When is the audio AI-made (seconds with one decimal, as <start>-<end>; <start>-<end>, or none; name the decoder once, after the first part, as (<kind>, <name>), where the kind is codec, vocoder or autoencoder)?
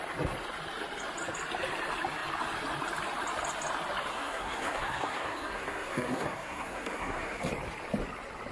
4.1-7.5 (codec, SNAC)